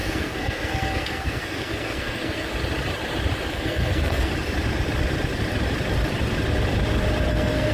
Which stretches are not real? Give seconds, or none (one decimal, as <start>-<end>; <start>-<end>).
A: 0.0-2.5; 3.5-4.3; 7.3-7.7